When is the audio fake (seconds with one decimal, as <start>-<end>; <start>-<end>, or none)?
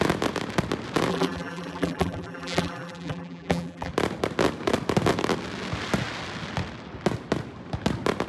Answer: 1.1-3.9